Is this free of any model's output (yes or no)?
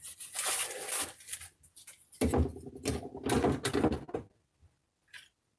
yes